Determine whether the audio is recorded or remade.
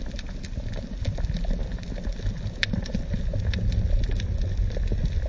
recorded